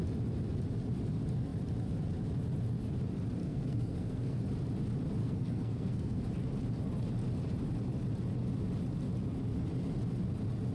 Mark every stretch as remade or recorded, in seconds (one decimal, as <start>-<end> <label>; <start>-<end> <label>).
0.0-3.4 recorded; 3.4-4.4 remade; 4.4-5.2 recorded; 5.2-6.3 remade; 6.3-10.7 recorded